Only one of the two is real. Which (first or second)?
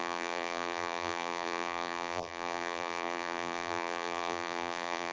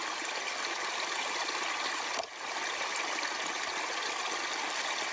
second